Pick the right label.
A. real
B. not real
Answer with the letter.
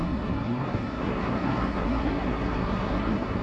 B